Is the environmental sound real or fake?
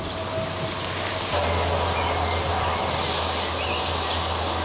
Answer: real